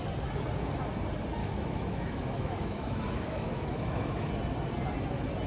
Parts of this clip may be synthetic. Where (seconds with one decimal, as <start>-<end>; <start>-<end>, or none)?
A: 1.4-4.3